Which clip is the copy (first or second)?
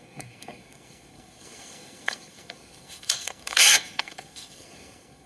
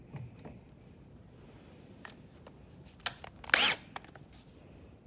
first